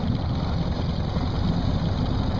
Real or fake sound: real